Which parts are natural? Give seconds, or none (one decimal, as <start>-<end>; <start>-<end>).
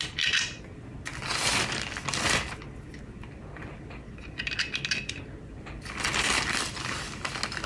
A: 0.0-7.7